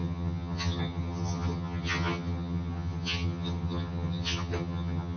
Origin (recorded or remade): remade